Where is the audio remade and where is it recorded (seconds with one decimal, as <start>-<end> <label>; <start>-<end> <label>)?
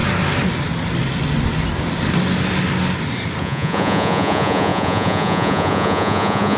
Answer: 0.0-3.4 recorded; 3.4-6.6 remade